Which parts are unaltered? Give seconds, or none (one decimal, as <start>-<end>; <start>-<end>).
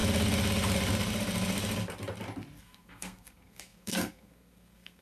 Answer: 0.0-2.6